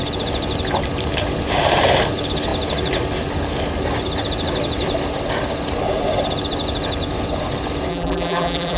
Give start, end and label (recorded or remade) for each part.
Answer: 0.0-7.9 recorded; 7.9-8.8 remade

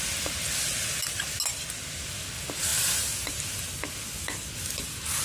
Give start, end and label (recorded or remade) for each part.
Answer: 0.0-5.2 recorded